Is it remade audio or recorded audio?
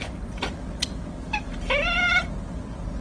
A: recorded